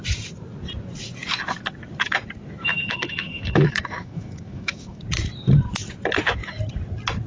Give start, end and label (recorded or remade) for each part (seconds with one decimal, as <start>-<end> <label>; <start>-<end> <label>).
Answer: 0.0-2.7 recorded; 2.7-5.0 remade; 5.0-7.3 recorded